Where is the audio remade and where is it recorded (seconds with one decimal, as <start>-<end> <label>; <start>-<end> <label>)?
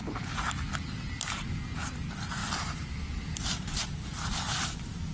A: 0.0-5.1 recorded